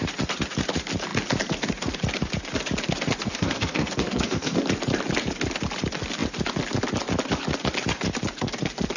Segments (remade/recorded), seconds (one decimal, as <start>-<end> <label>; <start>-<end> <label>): 0.0-3.2 recorded; 3.2-4.6 remade; 4.6-9.0 recorded

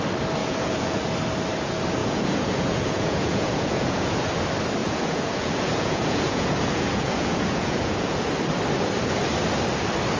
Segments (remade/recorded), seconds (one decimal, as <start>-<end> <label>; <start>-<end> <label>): 0.0-0.4 recorded; 0.4-1.0 remade; 1.0-2.0 recorded; 2.0-4.3 remade; 4.3-4.8 recorded; 4.8-8.3 remade; 8.3-10.2 recorded

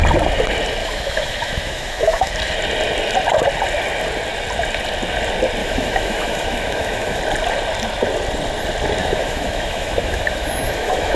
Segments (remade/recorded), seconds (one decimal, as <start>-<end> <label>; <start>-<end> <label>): 0.0-0.8 recorded; 0.8-2.3 remade; 2.3-5.6 recorded; 5.6-7.2 remade; 7.2-9.0 recorded; 9.0-11.2 remade

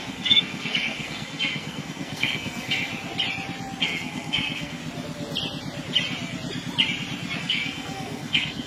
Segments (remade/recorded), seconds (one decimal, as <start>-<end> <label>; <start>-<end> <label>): 0.0-2.9 remade; 2.9-3.8 recorded; 3.8-4.8 remade; 4.8-7.4 recorded; 7.4-8.7 remade

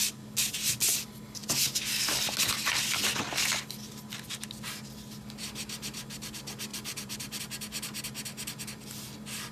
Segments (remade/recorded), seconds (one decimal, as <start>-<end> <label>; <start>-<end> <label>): 0.0-6.7 recorded; 6.7-7.4 remade; 7.4-9.5 recorded